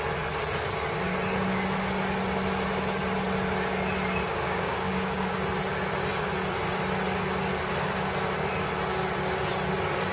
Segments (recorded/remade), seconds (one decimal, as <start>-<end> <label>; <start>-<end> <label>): 0.0-4.3 recorded; 4.3-5.3 remade; 5.3-10.1 recorded